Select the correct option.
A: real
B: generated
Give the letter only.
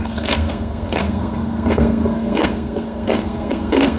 B